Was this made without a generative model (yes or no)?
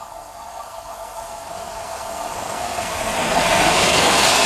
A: no